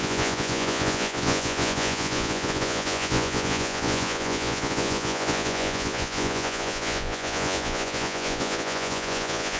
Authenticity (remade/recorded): remade